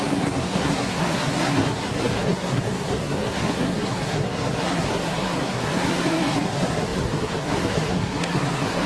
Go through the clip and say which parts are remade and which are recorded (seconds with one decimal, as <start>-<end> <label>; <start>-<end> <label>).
0.0-8.9 remade